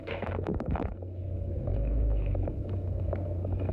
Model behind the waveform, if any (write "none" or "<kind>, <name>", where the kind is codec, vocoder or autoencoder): codec, SNAC